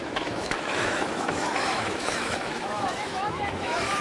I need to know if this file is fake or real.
fake